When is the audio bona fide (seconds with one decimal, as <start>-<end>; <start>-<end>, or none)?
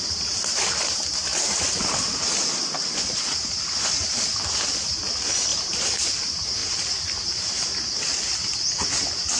0.0-5.5; 6.1-6.6; 7.5-9.4